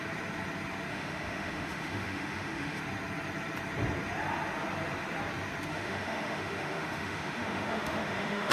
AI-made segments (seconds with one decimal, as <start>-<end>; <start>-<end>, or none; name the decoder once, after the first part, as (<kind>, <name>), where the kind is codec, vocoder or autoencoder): 0.9-2.8 (autoencoder, DAC-VAE); 5.7-8.5